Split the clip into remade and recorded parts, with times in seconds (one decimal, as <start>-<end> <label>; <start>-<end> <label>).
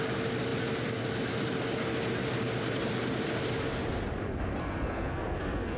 0.0-4.6 recorded; 4.6-5.8 remade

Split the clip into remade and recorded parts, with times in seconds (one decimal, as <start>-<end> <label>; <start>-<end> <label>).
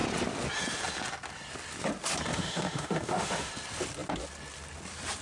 0.0-2.3 recorded; 2.3-3.5 remade; 3.5-5.2 recorded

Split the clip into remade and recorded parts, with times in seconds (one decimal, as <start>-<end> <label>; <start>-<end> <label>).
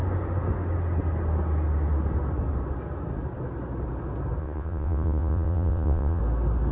0.0-4.4 recorded; 4.4-6.2 remade; 6.2-6.7 recorded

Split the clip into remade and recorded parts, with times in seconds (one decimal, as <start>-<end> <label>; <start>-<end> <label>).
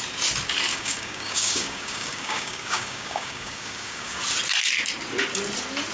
0.0-0.7 recorded; 0.7-4.2 remade; 4.2-5.9 recorded